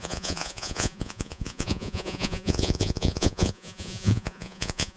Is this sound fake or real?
fake